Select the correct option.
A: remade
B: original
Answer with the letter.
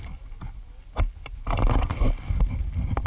B